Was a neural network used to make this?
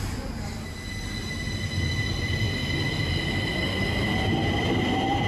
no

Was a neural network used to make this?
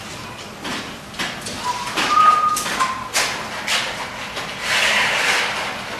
no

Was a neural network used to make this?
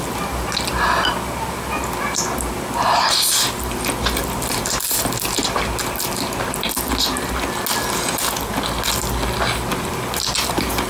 no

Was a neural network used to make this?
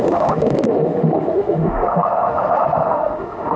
yes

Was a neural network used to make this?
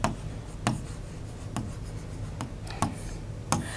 no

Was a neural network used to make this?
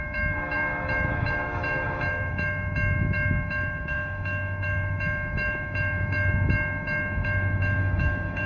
yes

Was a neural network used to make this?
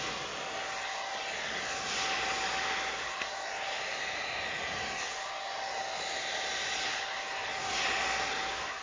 no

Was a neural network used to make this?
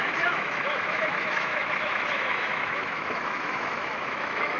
yes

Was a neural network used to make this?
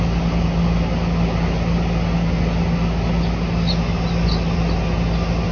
no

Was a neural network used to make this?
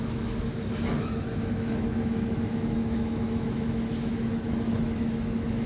yes